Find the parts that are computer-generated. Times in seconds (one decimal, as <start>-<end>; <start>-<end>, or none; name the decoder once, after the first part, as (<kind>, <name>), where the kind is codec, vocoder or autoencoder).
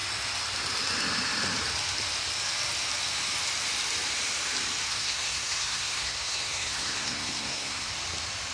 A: 4.9-7.9 (codec, SNAC)